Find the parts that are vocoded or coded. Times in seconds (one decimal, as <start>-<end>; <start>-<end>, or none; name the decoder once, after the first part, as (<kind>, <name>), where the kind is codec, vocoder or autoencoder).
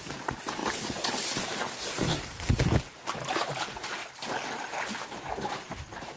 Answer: 0.0-0.6 (vocoder, BigVGAN v2); 1.8-4.0; 5.4-6.2